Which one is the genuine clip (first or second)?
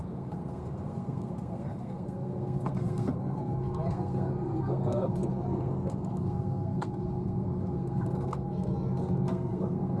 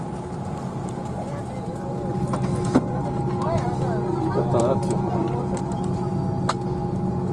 second